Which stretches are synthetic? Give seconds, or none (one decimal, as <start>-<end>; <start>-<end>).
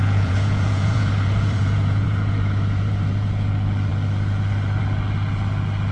0.0-3.5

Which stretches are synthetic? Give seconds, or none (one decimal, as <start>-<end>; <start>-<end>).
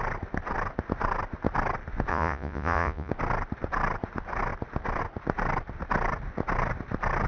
2.1-3.1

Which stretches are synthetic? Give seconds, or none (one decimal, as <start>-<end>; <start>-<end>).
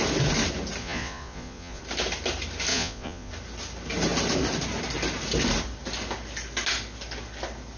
0.8-1.8; 2.7-3.3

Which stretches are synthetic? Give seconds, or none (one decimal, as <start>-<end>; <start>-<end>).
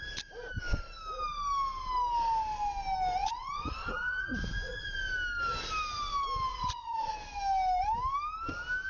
3.2-4.9; 6.5-7.1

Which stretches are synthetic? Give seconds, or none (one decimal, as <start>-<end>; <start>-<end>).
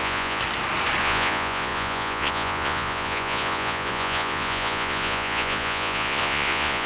0.0-0.4; 1.0-6.9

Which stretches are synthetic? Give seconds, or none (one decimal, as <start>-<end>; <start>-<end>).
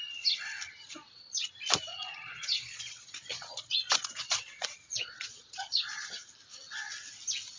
0.8-1.5; 1.9-6.1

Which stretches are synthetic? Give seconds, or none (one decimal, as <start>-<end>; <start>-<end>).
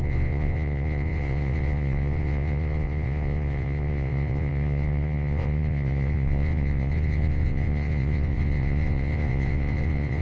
0.0-10.2